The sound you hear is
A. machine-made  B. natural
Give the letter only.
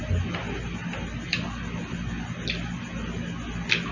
B